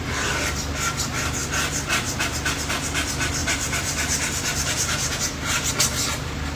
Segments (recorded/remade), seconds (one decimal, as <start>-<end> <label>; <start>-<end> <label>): 0.0-3.4 recorded; 3.4-5.7 remade; 5.7-6.6 recorded